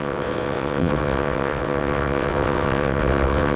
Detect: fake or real fake